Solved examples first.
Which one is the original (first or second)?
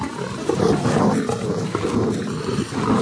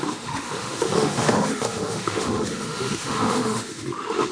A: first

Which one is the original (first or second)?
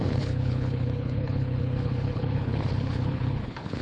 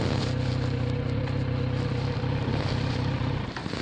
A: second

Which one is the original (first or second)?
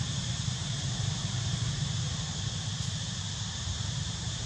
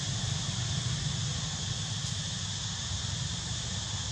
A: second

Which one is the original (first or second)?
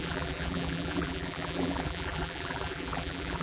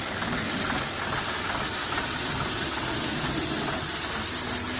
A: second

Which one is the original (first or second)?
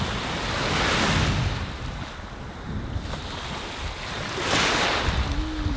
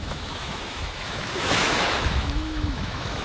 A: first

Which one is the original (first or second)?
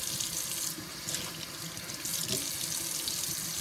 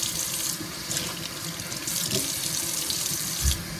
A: first